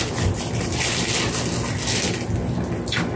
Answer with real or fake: real